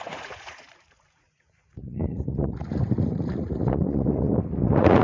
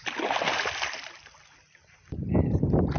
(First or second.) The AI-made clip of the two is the first